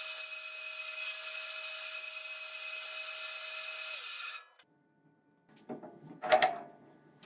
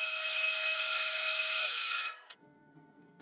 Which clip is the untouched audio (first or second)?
first